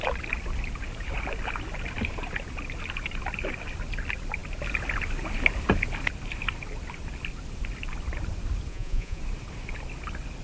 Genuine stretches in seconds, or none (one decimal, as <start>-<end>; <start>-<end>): 0.0-8.7; 9.2-10.4